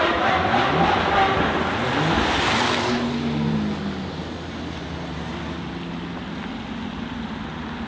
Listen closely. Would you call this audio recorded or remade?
recorded